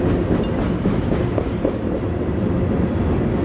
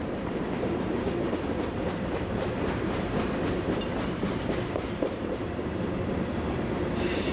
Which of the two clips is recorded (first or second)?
first